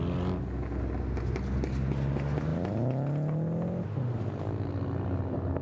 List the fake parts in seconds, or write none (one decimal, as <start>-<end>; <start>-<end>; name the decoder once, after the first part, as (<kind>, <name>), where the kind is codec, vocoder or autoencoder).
none